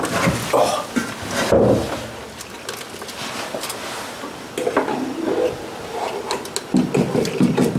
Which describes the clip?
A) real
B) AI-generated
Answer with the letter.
A